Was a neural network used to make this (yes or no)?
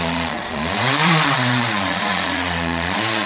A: yes